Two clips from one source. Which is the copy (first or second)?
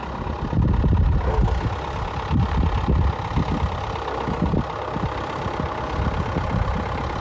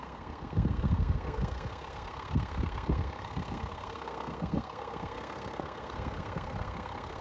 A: second